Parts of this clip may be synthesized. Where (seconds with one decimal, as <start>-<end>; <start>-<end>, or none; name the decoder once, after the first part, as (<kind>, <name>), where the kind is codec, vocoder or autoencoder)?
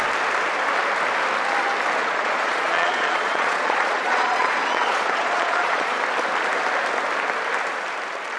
2.0-6.0 (vocoder, Vocos)